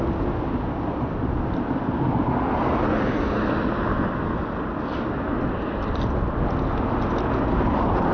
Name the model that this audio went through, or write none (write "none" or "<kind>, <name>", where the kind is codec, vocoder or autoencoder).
none